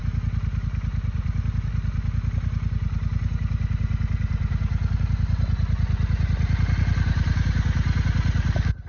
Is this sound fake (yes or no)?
no